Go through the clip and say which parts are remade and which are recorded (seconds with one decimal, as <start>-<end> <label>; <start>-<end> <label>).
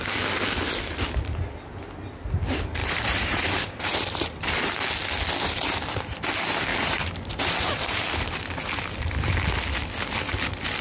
0.0-2.8 recorded; 2.8-4.6 remade; 4.6-6.7 recorded; 6.7-8.1 remade; 8.1-10.8 recorded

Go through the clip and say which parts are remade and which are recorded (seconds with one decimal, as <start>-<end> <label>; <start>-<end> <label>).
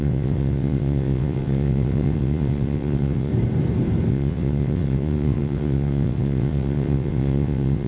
0.0-3.3 remade; 3.3-4.1 recorded; 4.1-7.9 remade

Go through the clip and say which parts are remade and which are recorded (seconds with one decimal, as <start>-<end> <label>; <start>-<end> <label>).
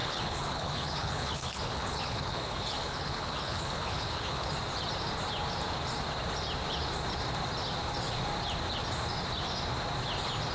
0.0-4.5 remade; 4.5-10.5 recorded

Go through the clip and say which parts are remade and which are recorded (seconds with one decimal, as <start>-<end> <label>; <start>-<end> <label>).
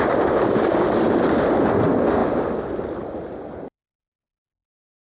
0.0-5.1 recorded